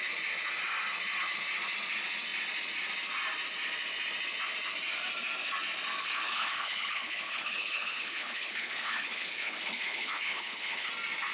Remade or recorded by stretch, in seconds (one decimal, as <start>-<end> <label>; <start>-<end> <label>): 0.0-6.0 recorded; 6.0-10.9 remade; 10.9-11.3 recorded